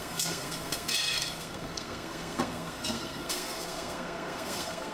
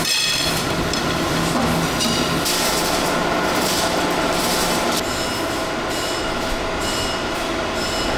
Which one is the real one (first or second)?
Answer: second